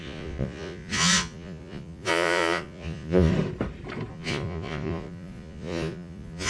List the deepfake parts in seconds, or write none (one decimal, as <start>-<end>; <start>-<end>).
0.0-3.3; 4.1-6.5